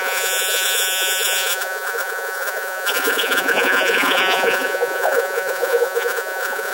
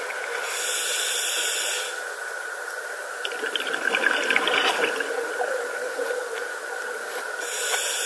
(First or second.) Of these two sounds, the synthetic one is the first